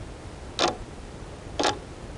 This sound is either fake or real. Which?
real